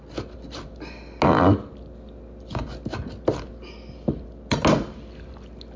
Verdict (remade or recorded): recorded